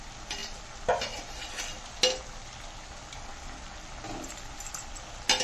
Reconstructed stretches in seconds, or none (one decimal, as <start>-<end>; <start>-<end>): none